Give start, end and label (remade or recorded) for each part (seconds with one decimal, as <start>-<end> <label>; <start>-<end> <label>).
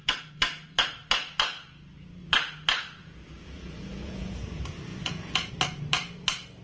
0.0-3.0 recorded; 3.0-4.4 remade; 4.4-4.9 recorded; 4.9-5.5 remade; 5.5-6.6 recorded